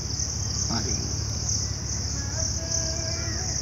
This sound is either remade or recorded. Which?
recorded